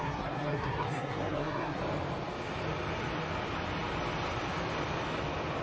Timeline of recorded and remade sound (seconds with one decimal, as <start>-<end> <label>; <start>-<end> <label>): 0.0-1.8 remade; 1.8-5.6 recorded